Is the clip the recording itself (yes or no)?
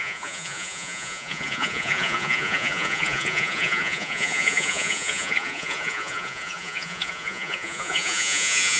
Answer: no